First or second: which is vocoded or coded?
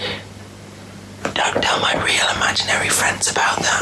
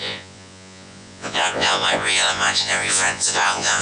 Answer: second